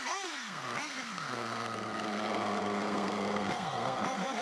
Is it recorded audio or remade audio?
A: remade